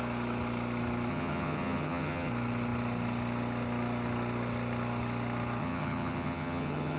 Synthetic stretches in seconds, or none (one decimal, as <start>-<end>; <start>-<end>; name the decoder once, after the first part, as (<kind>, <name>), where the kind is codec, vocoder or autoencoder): 1.1-2.3 (vocoder, HiFi-GAN); 5.6-7.0